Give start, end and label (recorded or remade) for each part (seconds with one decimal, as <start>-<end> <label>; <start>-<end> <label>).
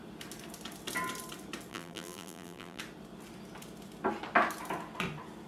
0.0-1.7 recorded; 1.7-2.8 remade; 2.8-5.5 recorded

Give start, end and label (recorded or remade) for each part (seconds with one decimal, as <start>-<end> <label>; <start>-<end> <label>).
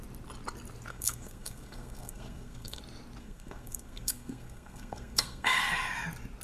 0.0-0.9 recorded; 0.9-2.8 remade; 2.8-3.2 recorded; 3.2-5.6 remade; 5.6-6.4 recorded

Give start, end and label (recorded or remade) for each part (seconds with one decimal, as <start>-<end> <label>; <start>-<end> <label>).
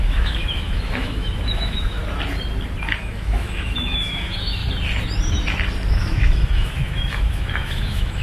0.0-2.0 remade; 2.0-3.0 recorded; 3.0-4.6 remade; 4.6-5.9 recorded; 5.9-8.2 remade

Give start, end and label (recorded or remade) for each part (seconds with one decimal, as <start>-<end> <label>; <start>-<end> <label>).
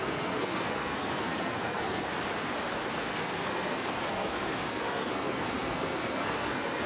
0.0-2.1 remade; 2.1-2.9 recorded; 2.9-6.9 remade